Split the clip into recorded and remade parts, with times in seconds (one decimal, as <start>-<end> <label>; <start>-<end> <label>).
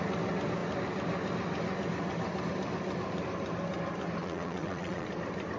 0.0-4.2 recorded; 4.2-5.1 remade; 5.1-5.6 recorded